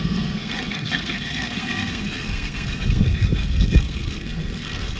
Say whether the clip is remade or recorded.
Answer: remade